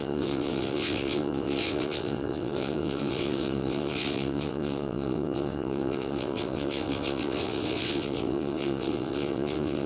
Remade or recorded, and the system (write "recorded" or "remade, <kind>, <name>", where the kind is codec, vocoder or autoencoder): remade, vocoder, WaveNeXt